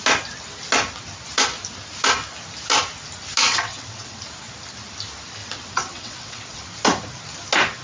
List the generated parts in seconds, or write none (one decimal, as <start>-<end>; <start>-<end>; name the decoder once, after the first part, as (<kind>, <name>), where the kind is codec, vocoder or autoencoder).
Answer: 3.5-4.2 (vocoder, WaveNeXt); 5.4-6.6